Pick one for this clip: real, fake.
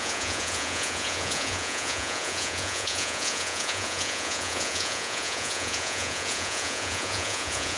fake